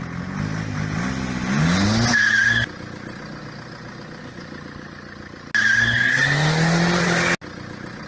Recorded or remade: recorded